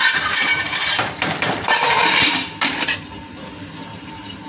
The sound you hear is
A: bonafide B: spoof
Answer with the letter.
B